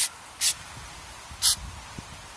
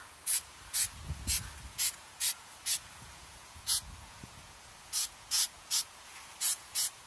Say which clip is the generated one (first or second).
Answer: second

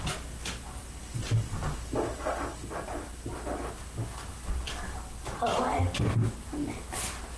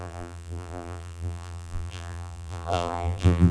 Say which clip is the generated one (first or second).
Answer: second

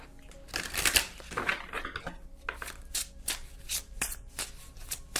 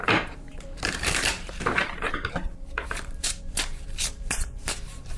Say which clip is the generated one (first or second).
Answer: second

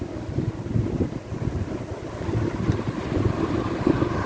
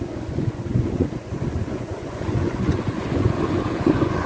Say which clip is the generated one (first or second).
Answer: second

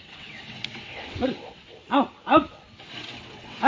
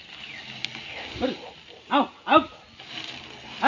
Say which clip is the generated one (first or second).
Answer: first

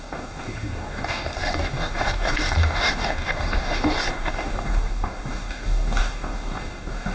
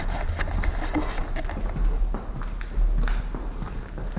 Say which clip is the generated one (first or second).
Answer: first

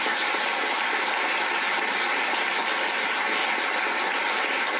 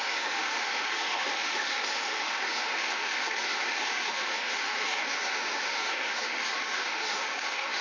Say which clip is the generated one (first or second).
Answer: second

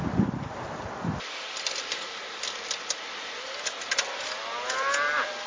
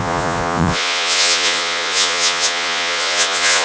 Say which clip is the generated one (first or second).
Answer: second